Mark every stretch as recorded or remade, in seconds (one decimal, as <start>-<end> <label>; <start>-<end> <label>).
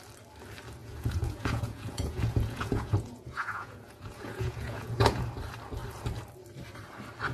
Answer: 0.0-0.8 recorded; 0.8-5.2 remade; 5.2-7.3 recorded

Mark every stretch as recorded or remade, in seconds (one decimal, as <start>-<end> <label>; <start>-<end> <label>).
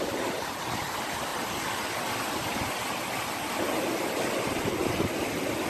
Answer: 0.0-5.7 recorded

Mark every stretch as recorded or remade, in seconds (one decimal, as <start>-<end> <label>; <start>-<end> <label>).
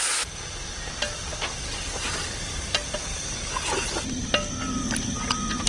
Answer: 0.0-5.7 recorded